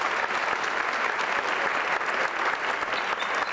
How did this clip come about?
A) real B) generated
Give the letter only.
A